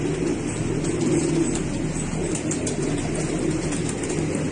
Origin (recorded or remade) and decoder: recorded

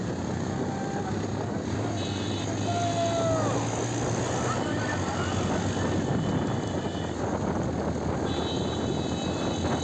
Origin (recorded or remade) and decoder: recorded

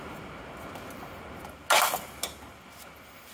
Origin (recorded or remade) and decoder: recorded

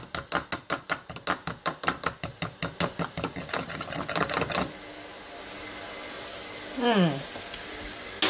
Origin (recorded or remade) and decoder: recorded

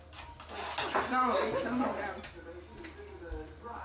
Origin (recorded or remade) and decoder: recorded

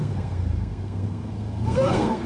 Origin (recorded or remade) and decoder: remade, codec, SNAC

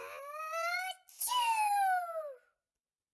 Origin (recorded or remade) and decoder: recorded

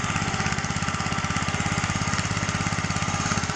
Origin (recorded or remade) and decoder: recorded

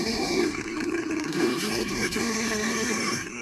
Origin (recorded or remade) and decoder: remade, codec, SNAC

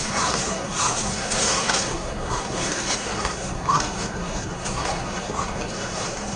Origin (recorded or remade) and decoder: remade, codec, SNAC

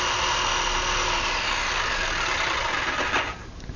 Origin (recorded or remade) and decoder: recorded